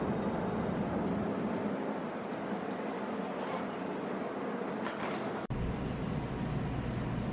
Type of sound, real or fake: real